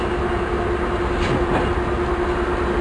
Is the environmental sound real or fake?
real